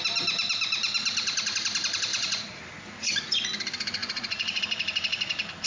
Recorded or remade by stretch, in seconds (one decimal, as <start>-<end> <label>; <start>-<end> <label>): 0.0-2.1 recorded; 2.1-2.6 remade; 2.6-4.0 recorded; 4.0-4.6 remade; 4.6-5.7 recorded